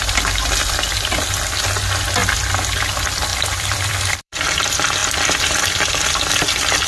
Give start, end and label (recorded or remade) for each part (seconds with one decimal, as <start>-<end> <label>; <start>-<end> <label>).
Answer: 0.0-3.3 recorded; 3.3-4.6 remade; 4.6-6.9 recorded